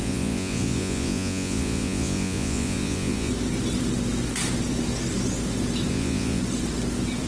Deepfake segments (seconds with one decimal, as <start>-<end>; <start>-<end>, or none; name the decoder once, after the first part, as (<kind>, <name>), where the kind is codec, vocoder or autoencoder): 0.0-3.3 (vocoder, Vocos); 5.9-6.4